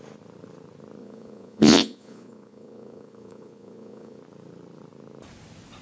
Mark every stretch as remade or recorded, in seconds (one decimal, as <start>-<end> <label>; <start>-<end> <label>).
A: 0.0-1.0 recorded; 1.0-4.2 remade; 4.2-5.8 recorded